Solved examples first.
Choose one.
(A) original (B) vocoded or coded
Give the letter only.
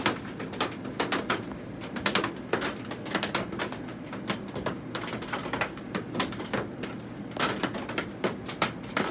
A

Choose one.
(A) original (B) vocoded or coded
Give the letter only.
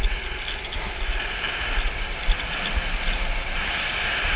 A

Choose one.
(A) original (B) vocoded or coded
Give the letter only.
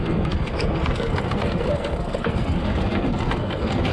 B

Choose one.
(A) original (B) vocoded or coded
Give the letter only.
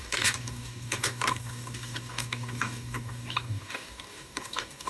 B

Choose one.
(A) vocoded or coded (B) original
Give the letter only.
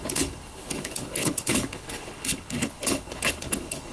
A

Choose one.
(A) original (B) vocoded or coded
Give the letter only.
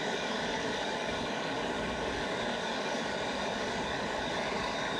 B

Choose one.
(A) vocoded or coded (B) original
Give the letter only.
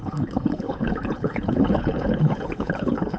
A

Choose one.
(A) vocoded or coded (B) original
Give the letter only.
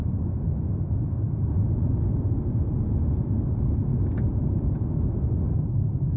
B